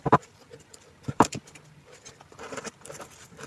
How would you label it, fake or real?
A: fake